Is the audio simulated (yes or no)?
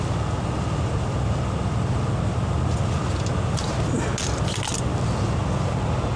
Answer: no